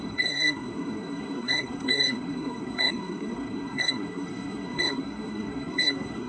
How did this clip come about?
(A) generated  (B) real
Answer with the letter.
A